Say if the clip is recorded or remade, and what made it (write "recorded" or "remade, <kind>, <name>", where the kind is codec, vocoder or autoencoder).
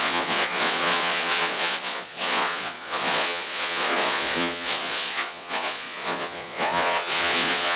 remade, vocoder, Vocos